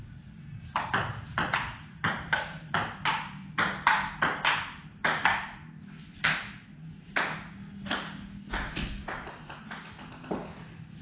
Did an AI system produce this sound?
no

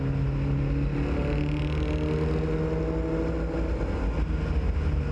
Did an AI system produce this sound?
no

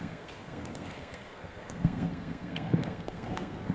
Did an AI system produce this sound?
yes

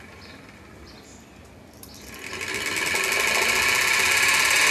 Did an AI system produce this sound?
no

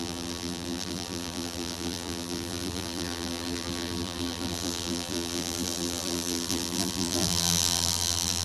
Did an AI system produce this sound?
yes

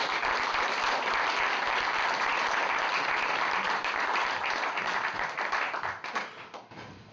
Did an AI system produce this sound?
no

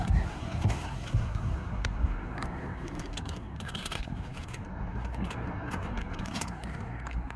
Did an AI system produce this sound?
yes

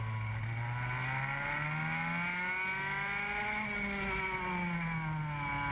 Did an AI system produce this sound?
no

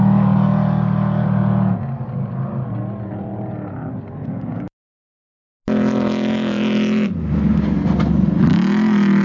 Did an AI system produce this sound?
no